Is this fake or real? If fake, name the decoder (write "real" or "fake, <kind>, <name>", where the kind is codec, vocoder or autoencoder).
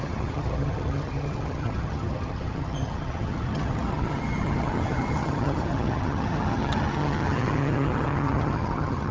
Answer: fake, vocoder, HiFi-GAN